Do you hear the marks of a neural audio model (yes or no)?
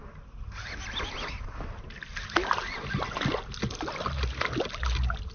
no